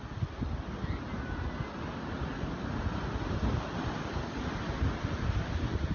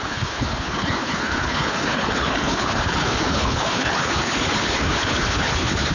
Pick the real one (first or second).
first